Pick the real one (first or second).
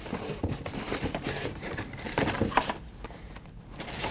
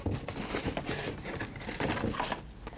second